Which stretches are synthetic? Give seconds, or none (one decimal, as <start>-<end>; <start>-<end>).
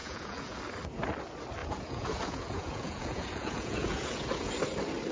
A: 0.0-0.6; 1.6-4.5